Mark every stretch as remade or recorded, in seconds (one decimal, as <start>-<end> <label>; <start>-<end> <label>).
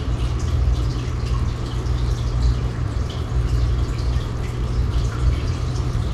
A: 0.0-2.6 recorded; 2.6-4.3 remade; 4.3-4.9 recorded; 4.9-6.1 remade